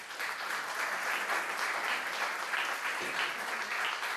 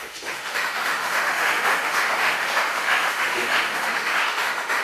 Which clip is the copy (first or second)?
second